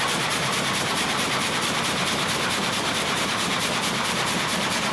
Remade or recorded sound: remade